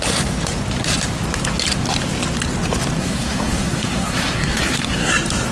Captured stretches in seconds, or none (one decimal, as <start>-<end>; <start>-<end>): 0.0-3.0; 5.1-5.5